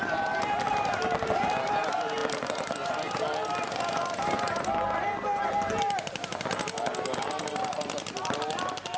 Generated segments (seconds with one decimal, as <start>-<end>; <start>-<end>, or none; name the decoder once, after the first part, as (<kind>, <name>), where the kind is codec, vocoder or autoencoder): none